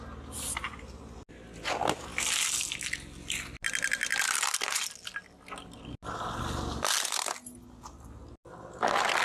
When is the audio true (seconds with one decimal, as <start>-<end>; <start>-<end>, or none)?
0.0-9.2